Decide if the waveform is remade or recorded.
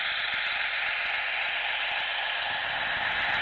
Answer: recorded